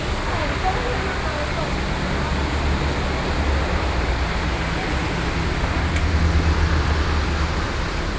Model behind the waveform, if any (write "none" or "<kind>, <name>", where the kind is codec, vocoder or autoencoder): none